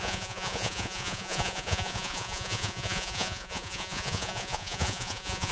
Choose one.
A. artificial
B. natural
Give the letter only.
A